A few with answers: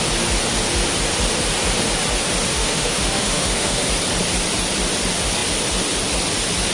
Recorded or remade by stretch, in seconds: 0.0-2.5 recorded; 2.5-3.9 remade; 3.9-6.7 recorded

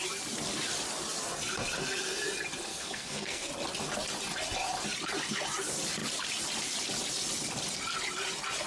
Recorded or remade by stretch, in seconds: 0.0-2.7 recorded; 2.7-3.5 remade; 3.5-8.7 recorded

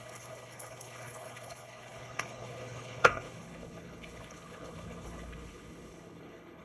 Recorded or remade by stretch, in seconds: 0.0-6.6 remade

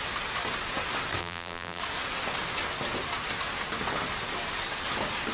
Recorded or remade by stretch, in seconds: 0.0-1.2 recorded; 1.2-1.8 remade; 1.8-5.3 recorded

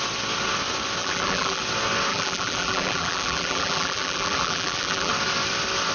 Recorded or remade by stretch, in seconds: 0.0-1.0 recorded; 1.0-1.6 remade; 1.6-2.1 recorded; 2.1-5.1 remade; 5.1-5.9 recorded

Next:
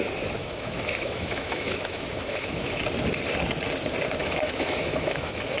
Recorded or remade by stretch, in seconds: 0.0-0.4 recorded; 0.4-2.8 remade; 2.8-4.2 recorded; 4.2-5.6 remade

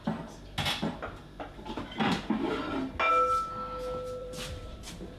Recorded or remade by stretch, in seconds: 0.0-4.2 recorded; 4.2-5.2 remade

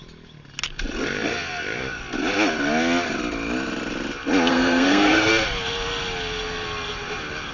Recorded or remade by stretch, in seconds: 0.0-4.5 recorded; 4.5-5.3 remade; 5.3-7.5 recorded